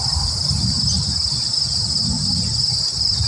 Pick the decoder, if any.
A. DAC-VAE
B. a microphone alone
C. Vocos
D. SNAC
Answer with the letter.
B